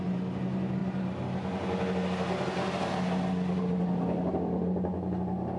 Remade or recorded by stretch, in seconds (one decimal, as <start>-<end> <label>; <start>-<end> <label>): 0.0-5.6 recorded